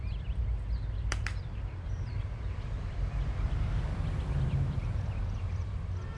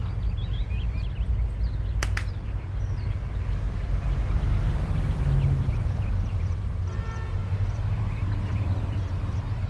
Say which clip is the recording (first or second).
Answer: second